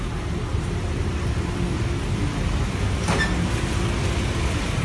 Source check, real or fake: real